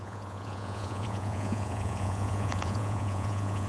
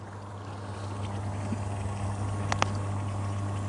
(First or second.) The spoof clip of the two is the first